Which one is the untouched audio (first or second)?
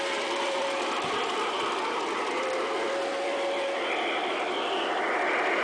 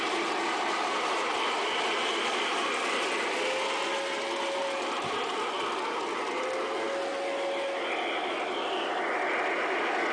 second